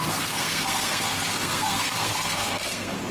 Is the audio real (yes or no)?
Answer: no